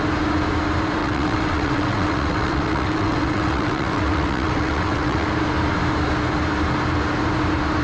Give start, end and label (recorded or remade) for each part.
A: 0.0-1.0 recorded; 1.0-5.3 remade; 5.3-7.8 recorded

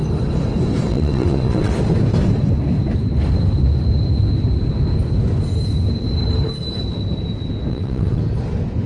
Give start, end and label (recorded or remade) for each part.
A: 0.0-0.9 recorded; 0.9-1.7 remade; 1.7-7.7 recorded; 7.7-8.2 remade; 8.2-8.9 recorded